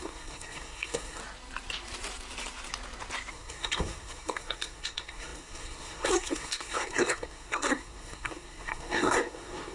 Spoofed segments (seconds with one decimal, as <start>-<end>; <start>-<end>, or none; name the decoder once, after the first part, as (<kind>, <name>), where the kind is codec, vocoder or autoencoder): 0.0-1.2 (codec, SNAC); 3.3-9.7